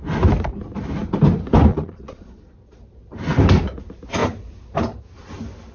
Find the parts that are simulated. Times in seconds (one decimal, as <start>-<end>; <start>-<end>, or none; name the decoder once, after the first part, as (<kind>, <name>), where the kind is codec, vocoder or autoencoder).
1.7-2.8 (vocoder, Vocos)